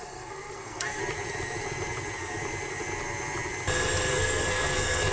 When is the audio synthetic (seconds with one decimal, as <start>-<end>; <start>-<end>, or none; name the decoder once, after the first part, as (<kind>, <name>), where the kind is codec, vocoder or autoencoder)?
0.0-1.0 (codec, SNAC); 4.1-5.1